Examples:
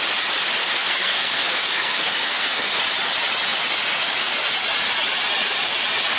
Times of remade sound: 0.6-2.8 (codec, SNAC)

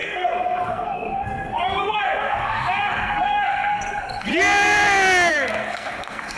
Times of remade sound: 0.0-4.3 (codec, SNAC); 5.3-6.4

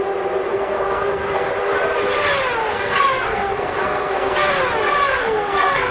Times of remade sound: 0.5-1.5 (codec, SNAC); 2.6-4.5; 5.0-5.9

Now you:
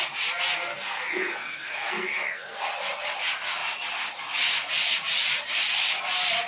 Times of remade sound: 0.7-2.7 (codec, SNAC)

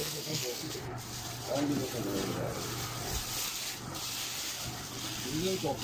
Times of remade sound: 0.0-0.8 (codec, SNAC)

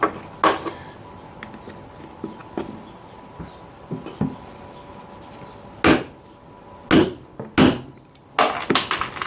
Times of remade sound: none

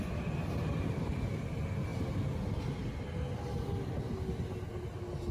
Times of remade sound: none

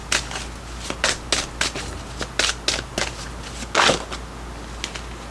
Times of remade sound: none